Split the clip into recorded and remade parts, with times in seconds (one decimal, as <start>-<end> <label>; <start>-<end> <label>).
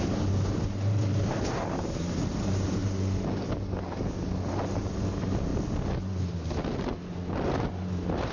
0.0-2.8 remade; 2.8-4.8 recorded; 4.8-5.5 remade; 5.5-7.7 recorded; 7.7-8.3 remade